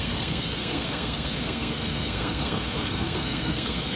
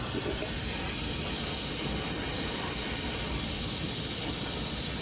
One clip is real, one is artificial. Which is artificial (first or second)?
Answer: first